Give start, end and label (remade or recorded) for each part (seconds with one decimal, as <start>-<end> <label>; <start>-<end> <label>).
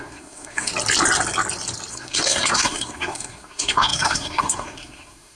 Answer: 0.0-0.7 remade; 0.7-1.9 recorded; 1.9-5.3 remade